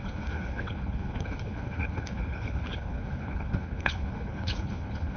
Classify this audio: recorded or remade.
remade